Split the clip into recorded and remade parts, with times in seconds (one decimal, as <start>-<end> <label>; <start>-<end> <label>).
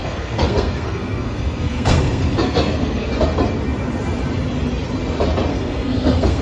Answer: 0.0-3.1 remade; 3.1-5.5 recorded; 5.5-6.4 remade